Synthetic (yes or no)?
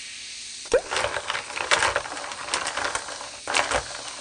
no